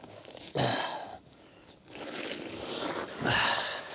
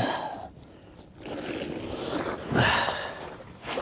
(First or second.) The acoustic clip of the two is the second